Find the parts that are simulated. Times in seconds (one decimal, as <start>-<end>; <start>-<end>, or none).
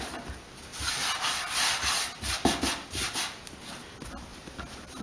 none